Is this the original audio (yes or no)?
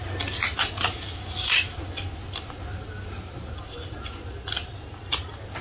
yes